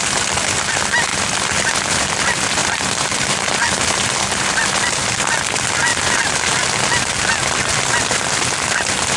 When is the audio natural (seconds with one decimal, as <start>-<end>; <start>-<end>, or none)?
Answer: 0.0-9.2